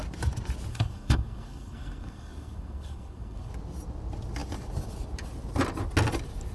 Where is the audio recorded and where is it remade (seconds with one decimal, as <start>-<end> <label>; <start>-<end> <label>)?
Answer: 0.0-0.7 recorded; 0.7-3.5 remade; 3.5-6.5 recorded

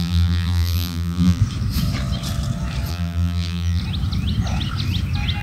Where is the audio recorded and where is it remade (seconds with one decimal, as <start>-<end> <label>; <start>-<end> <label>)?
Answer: 0.0-1.4 remade; 1.4-2.9 recorded; 2.9-3.8 remade; 3.8-5.4 recorded